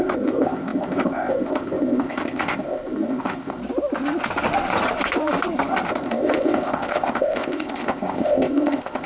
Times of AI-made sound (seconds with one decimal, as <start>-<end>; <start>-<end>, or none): 0.0-3.6; 5.9-9.1